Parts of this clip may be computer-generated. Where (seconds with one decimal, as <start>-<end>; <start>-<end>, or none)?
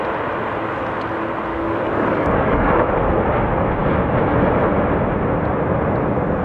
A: 1.5-3.1